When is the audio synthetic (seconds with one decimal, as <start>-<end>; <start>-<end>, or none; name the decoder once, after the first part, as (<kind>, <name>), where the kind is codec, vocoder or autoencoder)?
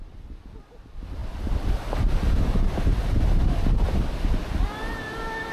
none